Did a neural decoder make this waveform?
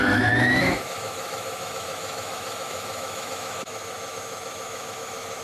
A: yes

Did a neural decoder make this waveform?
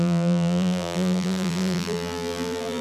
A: yes